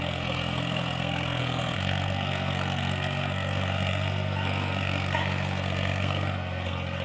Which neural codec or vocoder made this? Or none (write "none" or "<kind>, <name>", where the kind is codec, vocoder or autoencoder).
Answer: codec, SNAC